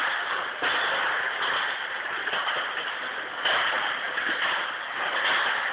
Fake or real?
real